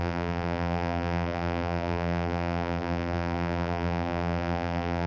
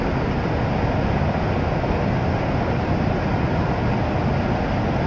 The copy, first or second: first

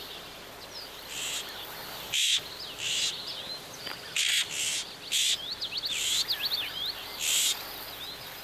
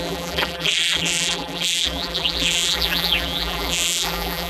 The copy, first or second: second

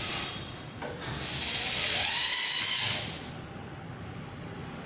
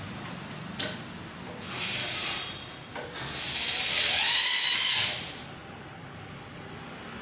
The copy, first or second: first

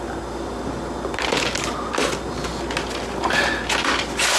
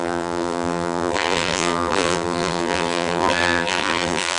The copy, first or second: second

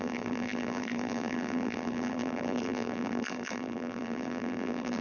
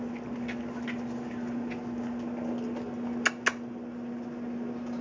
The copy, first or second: first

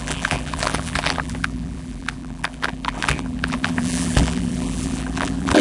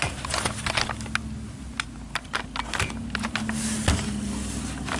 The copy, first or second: first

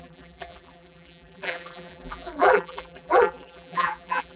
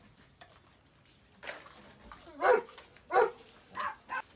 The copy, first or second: first